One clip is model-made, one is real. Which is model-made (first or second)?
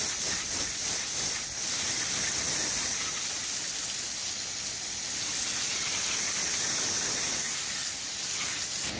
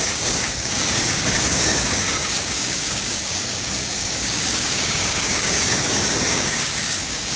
second